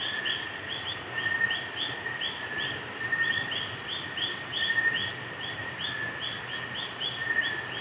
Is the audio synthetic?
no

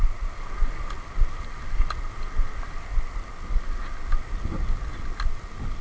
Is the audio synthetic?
no